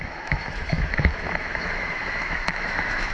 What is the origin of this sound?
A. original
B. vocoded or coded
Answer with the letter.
B